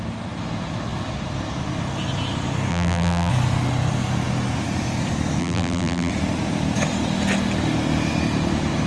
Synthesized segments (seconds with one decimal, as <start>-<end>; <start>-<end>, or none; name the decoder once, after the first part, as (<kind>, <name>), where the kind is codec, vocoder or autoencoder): 2.7-3.3 (vocoder, BigVGAN v2); 5.4-6.1

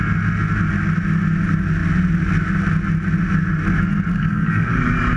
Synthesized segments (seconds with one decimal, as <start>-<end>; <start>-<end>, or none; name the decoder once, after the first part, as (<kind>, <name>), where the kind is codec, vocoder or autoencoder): 4.1-4.8 (codec, SNAC)

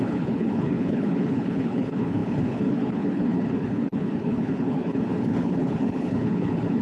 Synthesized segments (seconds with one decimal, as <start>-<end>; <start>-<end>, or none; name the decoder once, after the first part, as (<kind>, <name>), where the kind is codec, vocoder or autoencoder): 0.0-6.8 (codec, HILCodec)

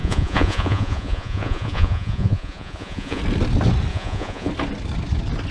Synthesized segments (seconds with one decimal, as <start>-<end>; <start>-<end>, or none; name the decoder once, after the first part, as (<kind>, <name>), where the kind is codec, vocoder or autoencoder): 0.0-3.2 (vocoder, Vocos); 3.9-4.5

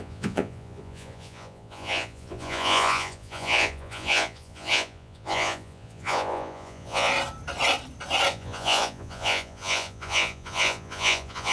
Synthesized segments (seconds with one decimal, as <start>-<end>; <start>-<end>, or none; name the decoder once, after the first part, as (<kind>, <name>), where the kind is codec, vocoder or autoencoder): 0.0-7.1 (vocoder, Vocos); 8.3-11.5

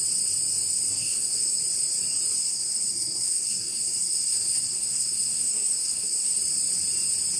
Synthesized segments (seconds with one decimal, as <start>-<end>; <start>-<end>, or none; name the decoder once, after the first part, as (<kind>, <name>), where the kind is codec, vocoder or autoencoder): 0.9-1.6 (codec, SNAC); 2.4-6.4